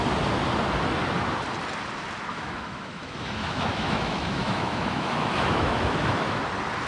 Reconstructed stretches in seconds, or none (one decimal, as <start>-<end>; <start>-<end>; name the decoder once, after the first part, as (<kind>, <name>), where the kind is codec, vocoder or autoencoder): 2.3-6.4 (autoencoder, DAC-VAE)